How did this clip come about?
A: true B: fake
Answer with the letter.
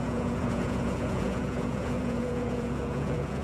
B